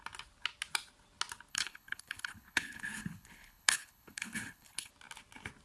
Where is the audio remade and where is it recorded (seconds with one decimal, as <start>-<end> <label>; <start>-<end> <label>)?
0.0-1.5 recorded; 1.5-4.9 remade; 4.9-5.6 recorded